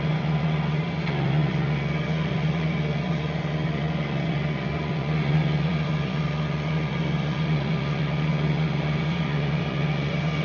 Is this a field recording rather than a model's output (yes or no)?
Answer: no